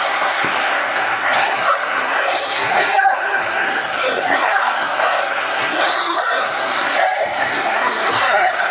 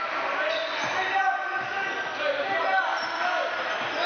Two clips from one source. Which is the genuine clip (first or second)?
second